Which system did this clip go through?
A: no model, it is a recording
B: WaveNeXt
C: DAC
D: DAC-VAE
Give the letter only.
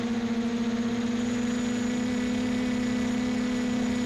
A